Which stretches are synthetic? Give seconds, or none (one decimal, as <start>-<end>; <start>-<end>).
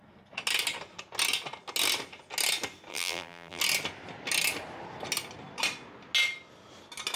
2.9-3.6